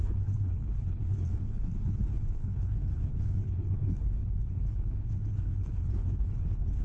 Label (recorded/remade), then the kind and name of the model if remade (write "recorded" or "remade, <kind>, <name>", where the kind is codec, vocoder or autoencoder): remade, codec, HILCodec